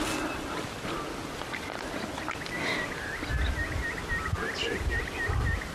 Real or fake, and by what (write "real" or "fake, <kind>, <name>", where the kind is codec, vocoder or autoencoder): real